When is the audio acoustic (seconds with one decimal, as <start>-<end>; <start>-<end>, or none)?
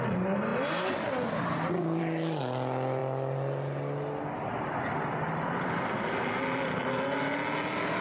0.0-8.0